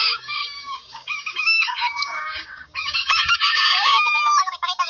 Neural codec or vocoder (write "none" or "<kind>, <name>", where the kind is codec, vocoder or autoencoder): codec, DAC